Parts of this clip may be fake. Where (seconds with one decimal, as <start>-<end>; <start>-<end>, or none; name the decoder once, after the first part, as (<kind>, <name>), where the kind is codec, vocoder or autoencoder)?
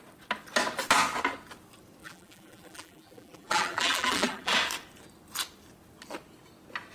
2.0-4.5 (vocoder, BigVGAN v2)